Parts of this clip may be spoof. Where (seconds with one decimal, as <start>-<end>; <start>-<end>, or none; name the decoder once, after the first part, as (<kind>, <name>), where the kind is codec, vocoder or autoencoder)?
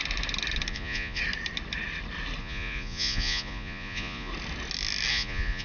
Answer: 0.7-1.2 (vocoder, Vocos); 2.4-4.3; 5.1-5.6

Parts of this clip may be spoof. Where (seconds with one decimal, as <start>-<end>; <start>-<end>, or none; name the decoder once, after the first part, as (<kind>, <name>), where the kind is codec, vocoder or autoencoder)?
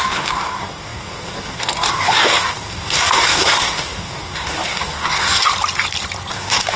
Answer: 0.0-5.5 (codec, DAC); 6.3-6.8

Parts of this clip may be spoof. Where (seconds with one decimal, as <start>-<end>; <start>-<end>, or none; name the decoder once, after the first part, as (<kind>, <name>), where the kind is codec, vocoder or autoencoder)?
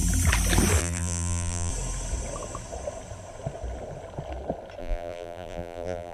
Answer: 0.8-1.7 (vocoder, BigVGAN v2); 4.8-6.1